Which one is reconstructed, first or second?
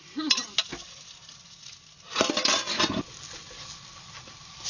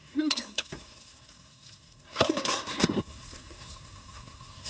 second